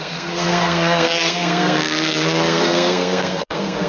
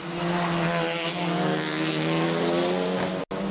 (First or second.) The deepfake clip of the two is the first